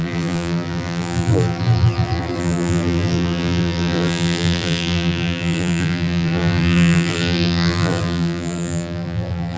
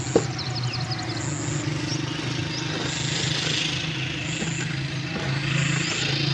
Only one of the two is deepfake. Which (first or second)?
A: first